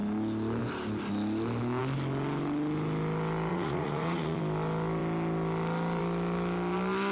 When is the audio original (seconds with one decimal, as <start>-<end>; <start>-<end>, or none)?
0.0-3.5; 4.4-7.1